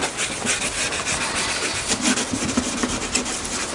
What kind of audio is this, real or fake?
real